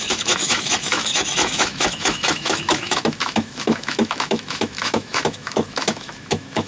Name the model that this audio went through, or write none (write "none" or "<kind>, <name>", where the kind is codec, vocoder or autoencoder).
autoencoder, DAC-VAE